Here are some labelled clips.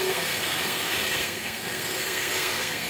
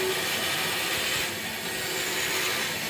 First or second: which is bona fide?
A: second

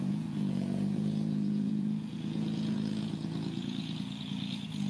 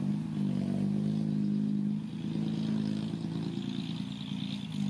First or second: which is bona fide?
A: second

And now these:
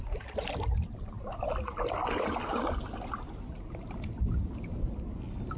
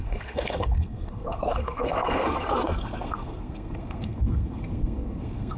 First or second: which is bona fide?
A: first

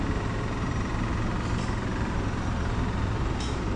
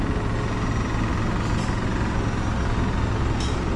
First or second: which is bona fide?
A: second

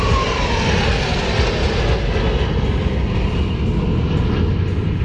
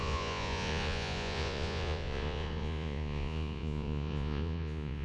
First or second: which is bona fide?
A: first